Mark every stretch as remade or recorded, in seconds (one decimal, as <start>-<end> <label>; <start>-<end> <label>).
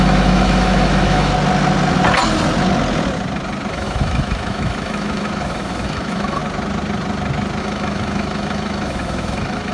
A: 0.0-1.3 remade; 1.3-3.7 recorded; 3.7-6.4 remade; 6.4-7.6 recorded; 7.6-9.7 remade